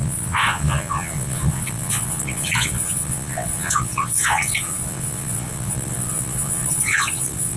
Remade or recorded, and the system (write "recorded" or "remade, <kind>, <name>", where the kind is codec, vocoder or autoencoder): remade, vocoder, Vocos